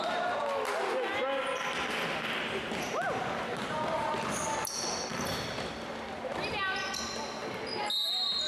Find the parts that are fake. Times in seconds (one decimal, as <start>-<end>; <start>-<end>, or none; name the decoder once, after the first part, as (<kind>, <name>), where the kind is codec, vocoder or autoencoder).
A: none